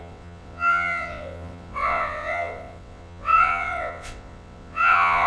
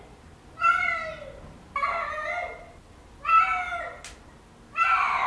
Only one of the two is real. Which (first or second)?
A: second